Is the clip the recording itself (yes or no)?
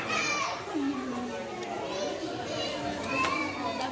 yes